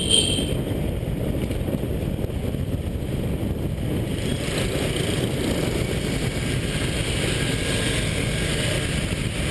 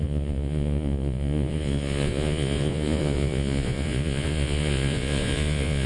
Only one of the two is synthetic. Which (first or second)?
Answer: second